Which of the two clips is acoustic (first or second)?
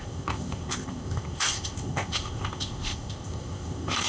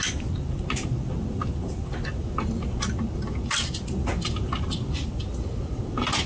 second